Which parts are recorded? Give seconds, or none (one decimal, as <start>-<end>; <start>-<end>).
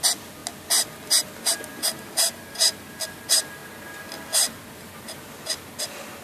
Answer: 0.0-6.2